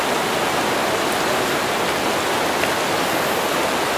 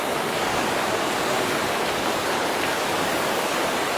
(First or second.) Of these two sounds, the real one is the first